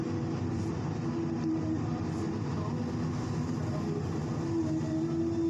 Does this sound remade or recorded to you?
recorded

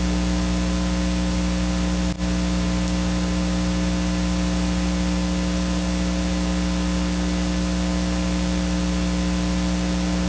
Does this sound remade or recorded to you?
recorded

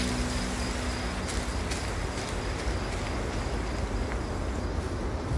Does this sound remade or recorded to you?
recorded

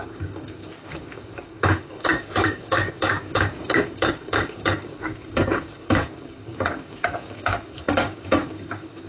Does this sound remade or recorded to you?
remade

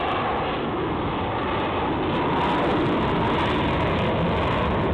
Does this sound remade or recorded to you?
recorded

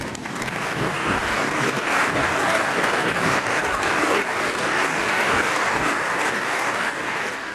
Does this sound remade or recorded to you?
remade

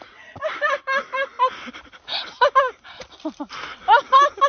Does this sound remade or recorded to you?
recorded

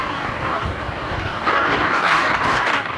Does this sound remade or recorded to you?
remade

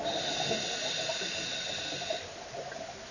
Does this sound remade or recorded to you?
recorded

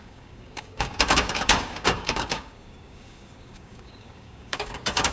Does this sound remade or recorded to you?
remade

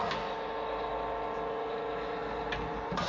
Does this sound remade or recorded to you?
recorded